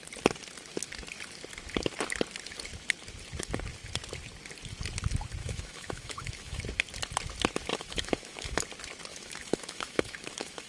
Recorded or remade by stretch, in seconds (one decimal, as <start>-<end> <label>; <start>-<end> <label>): 0.0-5.4 recorded; 5.4-6.6 remade; 6.6-7.7 recorded; 7.7-8.6 remade; 8.6-9.1 recorded; 9.1-10.7 remade